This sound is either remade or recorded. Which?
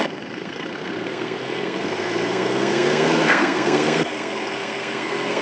remade